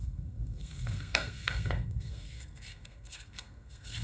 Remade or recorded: remade